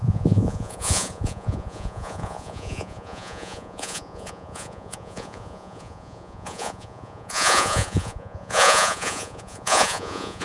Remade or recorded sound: remade